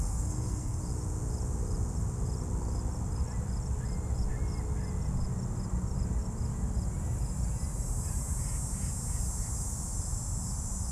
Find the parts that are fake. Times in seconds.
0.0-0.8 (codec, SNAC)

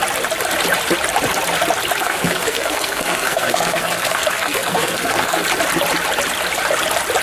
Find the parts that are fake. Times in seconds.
2.0-5.4 (codec, SNAC)

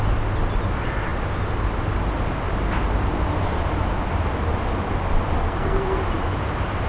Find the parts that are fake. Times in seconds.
5.4-6.0 (codec, SNAC)